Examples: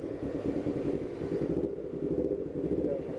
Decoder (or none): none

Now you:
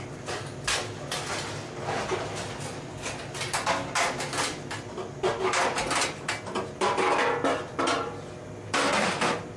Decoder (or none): none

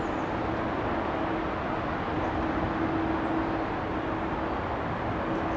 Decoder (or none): none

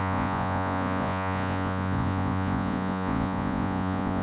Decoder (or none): vocoder, Vocos